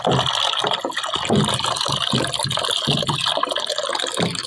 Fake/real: real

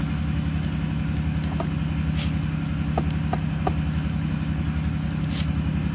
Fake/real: real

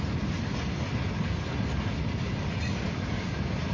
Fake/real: real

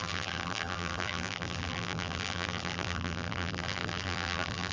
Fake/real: fake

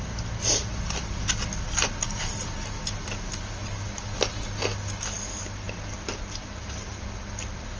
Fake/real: real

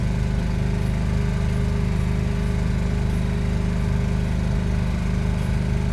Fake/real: real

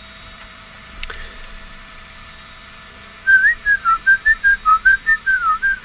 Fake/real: fake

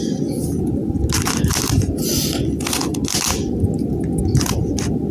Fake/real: real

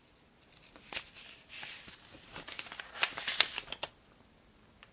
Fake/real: real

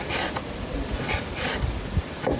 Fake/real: real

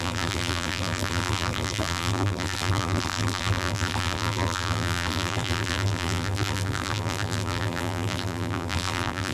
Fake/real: fake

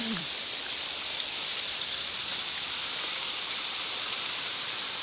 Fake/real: fake